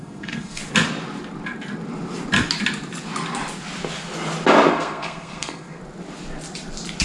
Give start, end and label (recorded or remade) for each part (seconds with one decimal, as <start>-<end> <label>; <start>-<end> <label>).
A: 0.0-0.6 remade; 0.6-4.7 recorded; 4.7-5.8 remade; 5.8-7.0 recorded